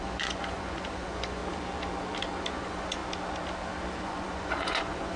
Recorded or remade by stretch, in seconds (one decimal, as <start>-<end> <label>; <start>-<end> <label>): 0.0-1.4 remade; 1.4-2.5 recorded; 2.5-3.0 remade; 3.0-4.0 recorded; 4.0-5.2 remade

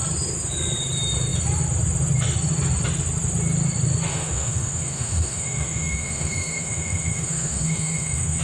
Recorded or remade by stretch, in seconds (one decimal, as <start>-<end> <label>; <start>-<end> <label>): 0.0-4.1 recorded; 4.1-8.4 remade

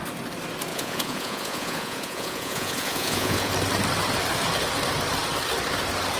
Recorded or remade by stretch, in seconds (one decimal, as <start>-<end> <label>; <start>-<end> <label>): 0.0-0.7 recorded; 0.7-3.5 remade; 3.5-6.2 recorded

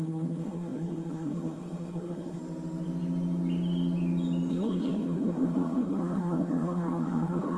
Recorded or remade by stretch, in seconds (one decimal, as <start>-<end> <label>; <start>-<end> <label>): 0.0-2.4 remade; 2.4-4.5 recorded; 4.5-7.6 remade

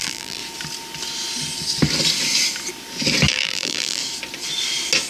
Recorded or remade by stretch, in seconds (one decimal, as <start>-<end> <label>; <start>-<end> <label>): 0.0-0.4 remade; 0.4-3.3 recorded; 3.3-4.0 remade; 4.0-5.1 recorded

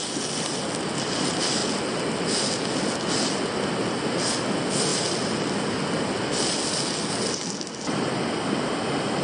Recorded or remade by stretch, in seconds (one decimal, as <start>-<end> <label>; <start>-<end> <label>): 0.0-9.2 recorded

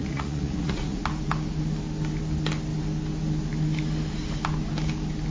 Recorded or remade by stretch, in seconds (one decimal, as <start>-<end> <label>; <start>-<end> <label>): 0.0-1.0 remade; 1.0-5.3 recorded